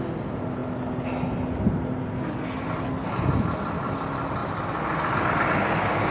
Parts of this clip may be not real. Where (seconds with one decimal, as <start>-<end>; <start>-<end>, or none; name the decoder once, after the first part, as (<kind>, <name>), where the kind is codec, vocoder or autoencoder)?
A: none